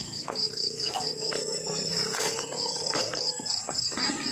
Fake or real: fake